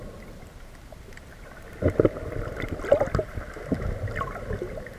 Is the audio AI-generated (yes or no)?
no